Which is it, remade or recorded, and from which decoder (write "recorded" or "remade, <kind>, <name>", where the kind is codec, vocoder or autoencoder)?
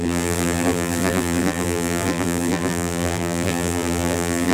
remade, vocoder, BigVGAN v2